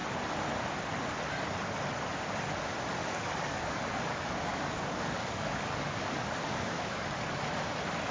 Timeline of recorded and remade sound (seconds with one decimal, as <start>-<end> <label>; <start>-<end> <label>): 0.0-3.0 recorded; 3.0-7.4 remade; 7.4-8.1 recorded